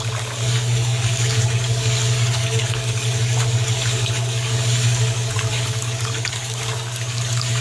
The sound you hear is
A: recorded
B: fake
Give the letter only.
B